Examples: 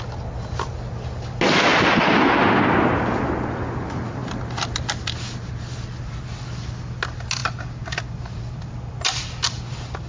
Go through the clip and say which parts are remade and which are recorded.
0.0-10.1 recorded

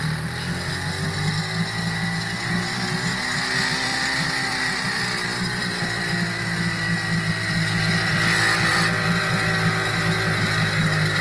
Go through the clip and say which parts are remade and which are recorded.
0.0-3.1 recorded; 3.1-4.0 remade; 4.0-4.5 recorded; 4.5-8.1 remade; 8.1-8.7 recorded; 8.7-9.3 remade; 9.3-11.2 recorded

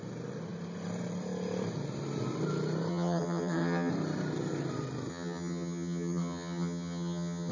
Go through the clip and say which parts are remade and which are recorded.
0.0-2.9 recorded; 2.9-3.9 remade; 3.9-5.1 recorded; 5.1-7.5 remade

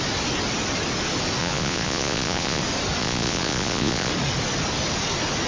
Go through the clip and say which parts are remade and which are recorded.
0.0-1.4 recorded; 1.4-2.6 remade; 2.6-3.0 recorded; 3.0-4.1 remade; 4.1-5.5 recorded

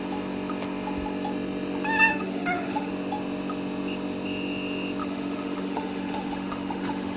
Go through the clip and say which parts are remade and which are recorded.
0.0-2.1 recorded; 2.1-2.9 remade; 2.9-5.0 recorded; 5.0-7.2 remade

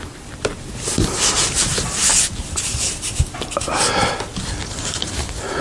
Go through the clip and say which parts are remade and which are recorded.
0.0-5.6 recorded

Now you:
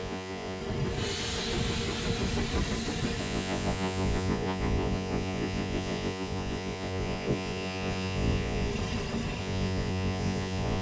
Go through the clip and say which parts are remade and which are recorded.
0.0-0.6 remade; 0.6-3.2 recorded; 3.2-8.7 remade; 8.7-9.4 recorded; 9.4-10.8 remade